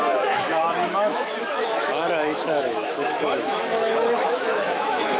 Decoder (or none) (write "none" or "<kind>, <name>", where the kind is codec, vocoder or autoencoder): autoencoder, DAC-VAE